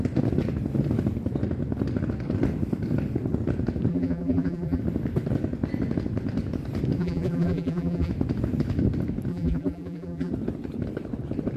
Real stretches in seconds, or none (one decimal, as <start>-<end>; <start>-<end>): 0.0-3.9; 4.8-7.0; 8.1-9.3; 10.3-11.6